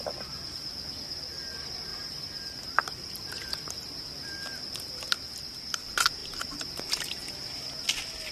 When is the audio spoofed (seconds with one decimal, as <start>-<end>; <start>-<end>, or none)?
1.9-3.5; 6.2-7.1